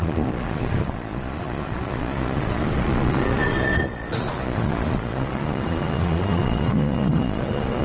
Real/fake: fake